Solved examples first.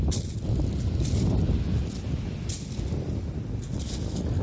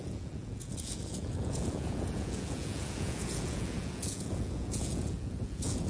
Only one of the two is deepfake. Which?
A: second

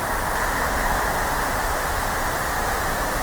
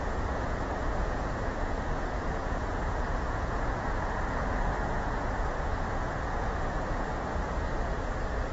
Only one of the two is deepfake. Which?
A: second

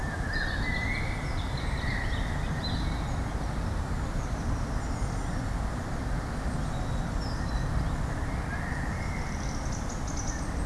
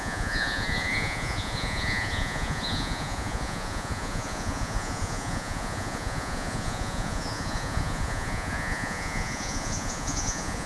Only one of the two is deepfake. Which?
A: second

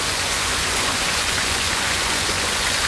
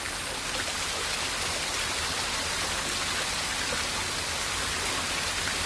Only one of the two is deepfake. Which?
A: first